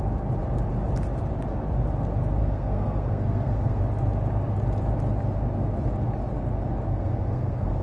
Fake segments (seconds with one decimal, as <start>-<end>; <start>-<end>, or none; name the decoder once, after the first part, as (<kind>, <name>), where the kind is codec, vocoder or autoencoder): 2.4-3.8 (codec, SNAC); 6.9-7.8